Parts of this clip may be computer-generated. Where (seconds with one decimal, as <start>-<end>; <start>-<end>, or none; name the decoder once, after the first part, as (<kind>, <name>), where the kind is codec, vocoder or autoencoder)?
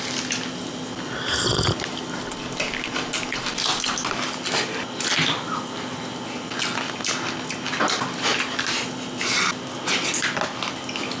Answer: none